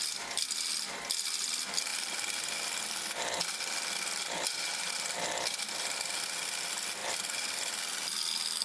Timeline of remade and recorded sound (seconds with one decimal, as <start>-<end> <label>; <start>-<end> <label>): 0.0-8.6 recorded

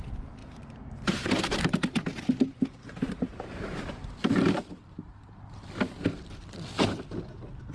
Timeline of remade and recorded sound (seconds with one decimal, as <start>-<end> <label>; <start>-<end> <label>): 0.0-0.4 recorded; 0.4-1.4 remade; 1.4-2.1 recorded; 2.1-5.1 remade; 5.1-7.7 recorded

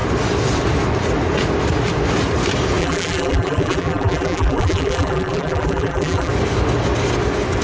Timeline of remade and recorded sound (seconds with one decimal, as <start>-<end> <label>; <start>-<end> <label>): 0.0-2.8 recorded; 2.8-6.3 remade; 6.3-7.6 recorded

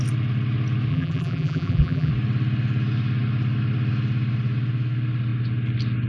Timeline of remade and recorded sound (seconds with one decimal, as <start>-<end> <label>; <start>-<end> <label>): 0.0-0.9 recorded; 0.9-2.1 remade; 2.1-6.1 recorded

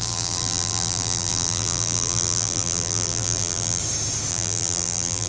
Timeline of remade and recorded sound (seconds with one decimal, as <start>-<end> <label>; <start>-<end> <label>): 0.0-3.8 remade; 3.8-4.3 recorded; 4.3-5.3 remade